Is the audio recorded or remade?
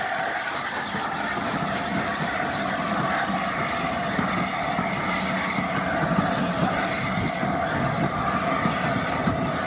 recorded